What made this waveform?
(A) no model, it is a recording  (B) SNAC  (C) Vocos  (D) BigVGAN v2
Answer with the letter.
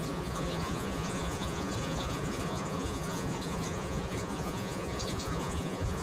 C